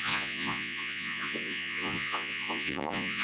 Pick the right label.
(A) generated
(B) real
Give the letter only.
A